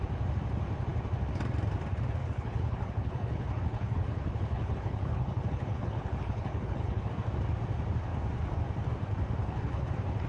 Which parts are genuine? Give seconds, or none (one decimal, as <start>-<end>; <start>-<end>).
0.0-2.2; 7.1-9.4; 9.9-10.3